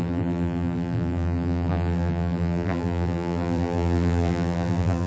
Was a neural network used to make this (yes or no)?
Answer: yes